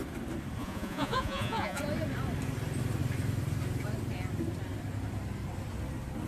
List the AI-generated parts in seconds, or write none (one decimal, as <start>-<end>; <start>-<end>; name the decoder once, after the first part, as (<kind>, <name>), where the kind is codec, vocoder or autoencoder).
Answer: 0.6-1.8 (vocoder, Vocos)